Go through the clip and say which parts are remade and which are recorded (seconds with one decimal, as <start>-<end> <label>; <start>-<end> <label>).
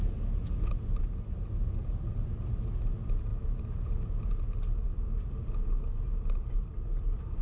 0.0-7.4 recorded